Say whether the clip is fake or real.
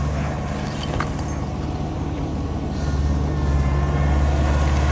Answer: real